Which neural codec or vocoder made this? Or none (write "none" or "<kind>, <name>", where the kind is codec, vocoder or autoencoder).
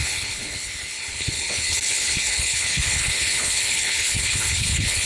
codec, HILCodec